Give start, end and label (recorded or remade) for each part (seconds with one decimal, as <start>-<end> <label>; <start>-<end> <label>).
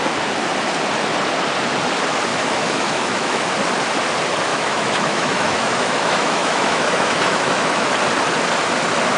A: 0.0-2.3 recorded; 2.3-3.4 remade; 3.4-4.5 recorded; 4.5-7.9 remade; 7.9-9.2 recorded